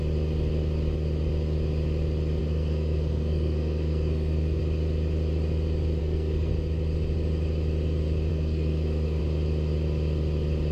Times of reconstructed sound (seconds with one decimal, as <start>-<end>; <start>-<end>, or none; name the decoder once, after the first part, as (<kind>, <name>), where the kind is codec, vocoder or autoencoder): 2.4-4.6 (codec, SNAC); 6.0-6.5; 8.3-9.2